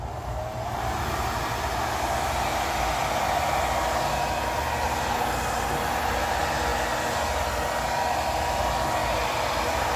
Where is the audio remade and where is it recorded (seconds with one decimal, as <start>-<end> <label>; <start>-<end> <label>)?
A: 0.0-10.0 recorded